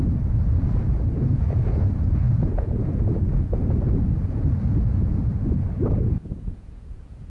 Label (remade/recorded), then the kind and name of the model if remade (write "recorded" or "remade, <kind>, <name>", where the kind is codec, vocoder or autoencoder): remade, vocoder, Vocos